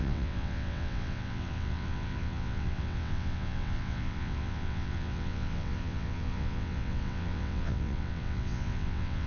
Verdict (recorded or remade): remade